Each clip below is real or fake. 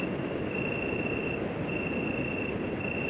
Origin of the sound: real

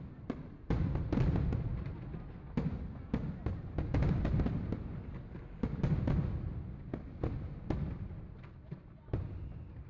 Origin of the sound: real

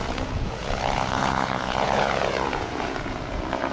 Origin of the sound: fake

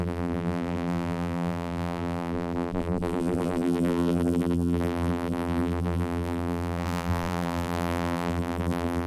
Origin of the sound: fake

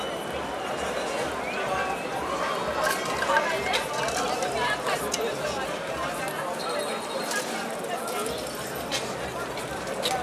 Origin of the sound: real